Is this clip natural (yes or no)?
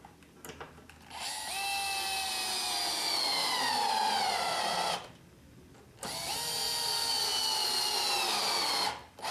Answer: yes